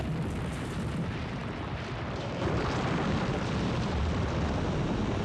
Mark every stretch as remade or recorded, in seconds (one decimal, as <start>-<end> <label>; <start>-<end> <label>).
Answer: 0.0-1.4 recorded; 1.4-4.5 remade; 4.5-5.2 recorded